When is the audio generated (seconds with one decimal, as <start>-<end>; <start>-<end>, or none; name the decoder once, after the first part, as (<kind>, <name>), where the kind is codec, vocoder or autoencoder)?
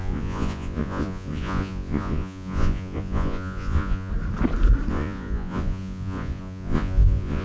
0.0-4.1 (vocoder, Vocos); 4.9-7.4